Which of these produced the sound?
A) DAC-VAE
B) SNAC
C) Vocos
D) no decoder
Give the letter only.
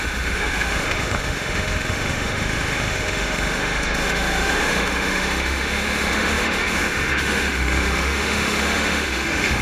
A